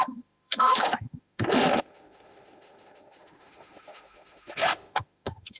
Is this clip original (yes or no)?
no